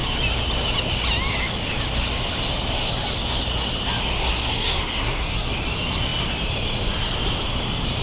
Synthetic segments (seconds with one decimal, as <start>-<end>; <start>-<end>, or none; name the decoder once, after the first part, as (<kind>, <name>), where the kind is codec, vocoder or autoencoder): 4.2-5.5 (codec, SNAC)